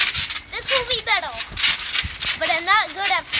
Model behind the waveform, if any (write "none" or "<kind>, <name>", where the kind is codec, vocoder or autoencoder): none